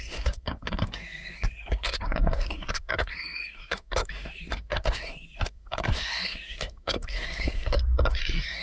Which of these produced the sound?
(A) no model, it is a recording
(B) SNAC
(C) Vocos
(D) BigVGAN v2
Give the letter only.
B